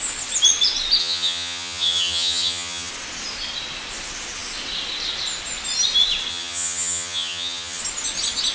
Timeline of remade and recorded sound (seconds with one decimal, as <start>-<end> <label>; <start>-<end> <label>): 0.0-1.0 recorded; 1.0-2.9 remade; 2.9-6.3 recorded; 6.3-7.8 remade; 7.8-8.5 recorded